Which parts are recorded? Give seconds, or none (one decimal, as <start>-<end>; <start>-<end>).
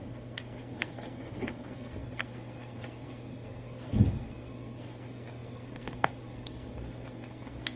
none